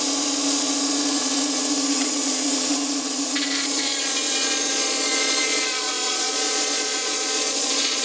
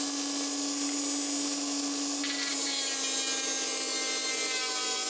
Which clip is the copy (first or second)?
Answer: first